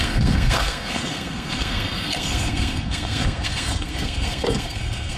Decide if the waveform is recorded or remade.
remade